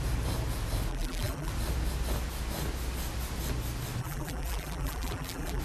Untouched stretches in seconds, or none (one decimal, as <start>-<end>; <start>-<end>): 0.0-0.9; 1.5-4.0